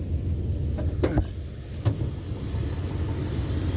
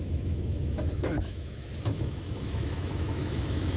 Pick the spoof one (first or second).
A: second